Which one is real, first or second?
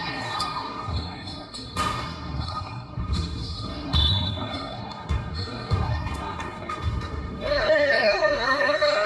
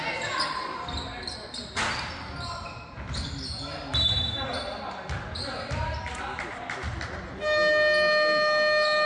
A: second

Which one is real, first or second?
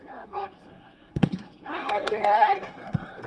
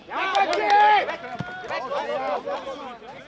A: second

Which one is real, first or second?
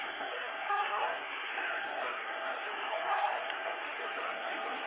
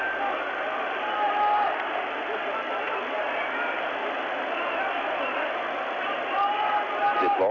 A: second